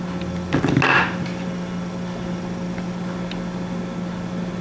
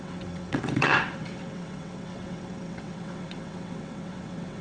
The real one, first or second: first